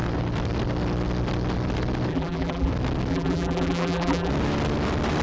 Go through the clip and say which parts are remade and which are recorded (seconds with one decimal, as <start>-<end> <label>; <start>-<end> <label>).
0.0-2.1 recorded; 2.1-2.7 remade; 2.7-3.1 recorded; 3.1-4.3 remade; 4.3-5.2 recorded